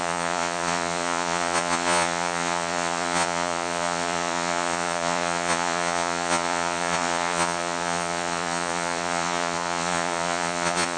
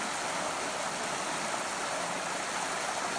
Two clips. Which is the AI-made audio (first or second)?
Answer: first